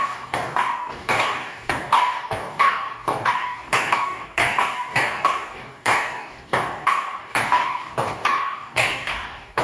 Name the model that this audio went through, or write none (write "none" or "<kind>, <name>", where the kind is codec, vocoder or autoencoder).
codec, DAC